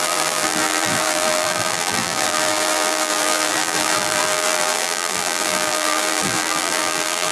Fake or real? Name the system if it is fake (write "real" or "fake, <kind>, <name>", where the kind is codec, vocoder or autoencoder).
fake, vocoder, BigVGAN v2